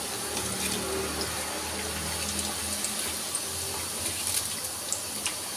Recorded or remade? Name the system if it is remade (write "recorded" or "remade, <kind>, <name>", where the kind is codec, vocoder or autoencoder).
recorded